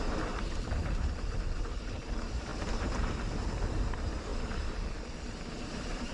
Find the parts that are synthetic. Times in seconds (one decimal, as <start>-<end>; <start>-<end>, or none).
0.0-4.3; 5.3-6.1

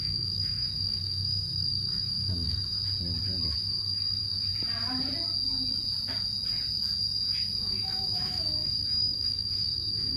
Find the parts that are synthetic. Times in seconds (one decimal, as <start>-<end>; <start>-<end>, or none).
0.0-2.8; 3.6-4.5; 7.6-10.2

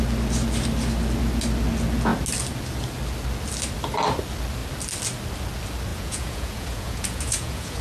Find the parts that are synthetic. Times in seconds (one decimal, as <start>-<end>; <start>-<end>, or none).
5.9-7.8

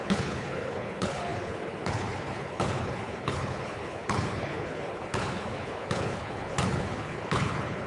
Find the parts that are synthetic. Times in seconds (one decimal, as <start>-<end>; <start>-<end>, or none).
0.0-7.9